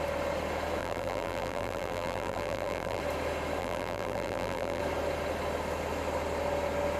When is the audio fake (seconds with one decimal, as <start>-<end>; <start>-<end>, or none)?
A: 0.8-3.0; 3.6-4.8